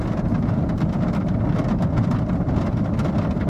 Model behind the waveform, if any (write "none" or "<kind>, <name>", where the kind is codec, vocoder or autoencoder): none